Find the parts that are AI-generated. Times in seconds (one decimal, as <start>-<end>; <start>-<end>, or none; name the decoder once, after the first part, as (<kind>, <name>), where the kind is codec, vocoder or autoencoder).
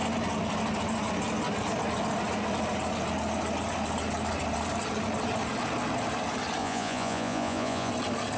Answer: 6.6-7.9 (vocoder, Vocos)